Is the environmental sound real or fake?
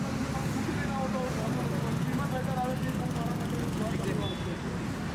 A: real